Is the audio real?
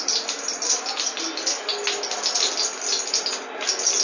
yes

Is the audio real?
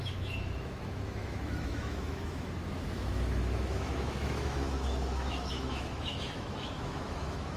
no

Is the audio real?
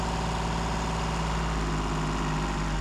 yes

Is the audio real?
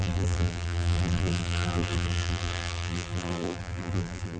no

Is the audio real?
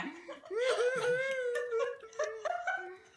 yes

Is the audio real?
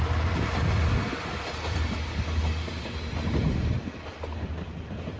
yes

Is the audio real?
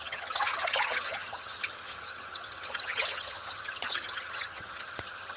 no